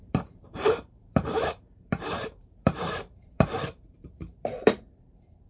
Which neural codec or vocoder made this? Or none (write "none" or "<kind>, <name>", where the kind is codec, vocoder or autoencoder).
vocoder, BigVGAN v2